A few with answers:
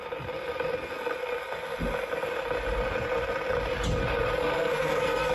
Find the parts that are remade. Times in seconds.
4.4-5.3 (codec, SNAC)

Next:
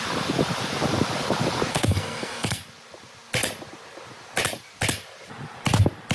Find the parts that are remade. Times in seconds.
1.7-2.6 (codec, SNAC)

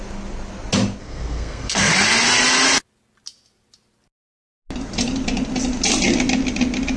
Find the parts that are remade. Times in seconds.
1.0-1.9 (codec, SNAC)

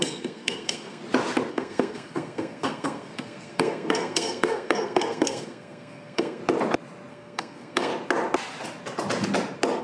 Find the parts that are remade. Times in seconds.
0.0-1.0 (codec, SNAC); 1.5-6.4; 7.1-7.9

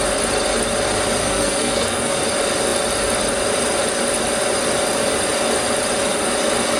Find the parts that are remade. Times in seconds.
1.2-2.2 (codec, SNAC)

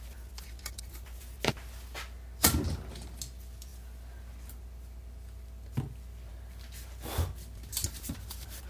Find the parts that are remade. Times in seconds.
none